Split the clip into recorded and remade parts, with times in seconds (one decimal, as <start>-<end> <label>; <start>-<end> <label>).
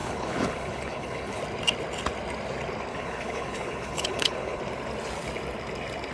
0.0-1.4 remade; 1.4-2.9 recorded; 2.9-4.6 remade; 4.6-6.1 recorded